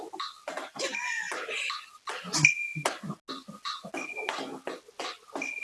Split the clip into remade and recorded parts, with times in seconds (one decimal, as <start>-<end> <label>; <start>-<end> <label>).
0.0-5.6 recorded